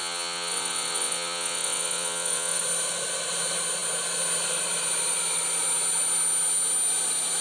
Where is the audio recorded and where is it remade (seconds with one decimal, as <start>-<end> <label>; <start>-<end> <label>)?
0.0-2.6 remade; 2.6-7.4 recorded